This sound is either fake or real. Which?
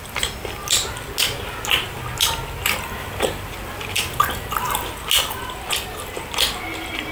real